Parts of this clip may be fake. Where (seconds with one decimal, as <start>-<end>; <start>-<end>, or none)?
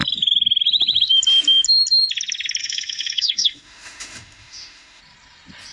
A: 2.6-5.0